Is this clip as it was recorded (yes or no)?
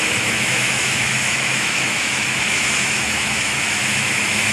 no